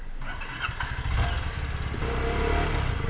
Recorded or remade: recorded